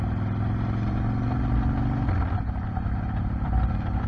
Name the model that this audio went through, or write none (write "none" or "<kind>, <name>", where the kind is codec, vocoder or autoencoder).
none